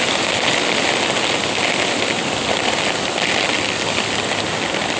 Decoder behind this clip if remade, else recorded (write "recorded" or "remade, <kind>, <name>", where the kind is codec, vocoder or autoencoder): recorded